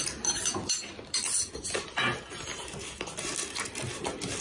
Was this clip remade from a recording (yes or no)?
no